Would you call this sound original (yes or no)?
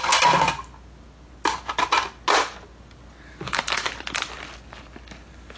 yes